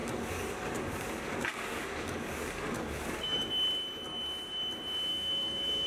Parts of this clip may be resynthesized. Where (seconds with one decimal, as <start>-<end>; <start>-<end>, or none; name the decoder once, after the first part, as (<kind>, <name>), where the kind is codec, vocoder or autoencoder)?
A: 0.0-3.5 (codec, DAC); 5.1-5.9